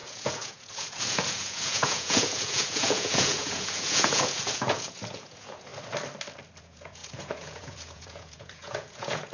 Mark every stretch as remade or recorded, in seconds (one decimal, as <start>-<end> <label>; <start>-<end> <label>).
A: 0.0-5.7 remade; 5.7-6.6 recorded; 6.6-9.3 remade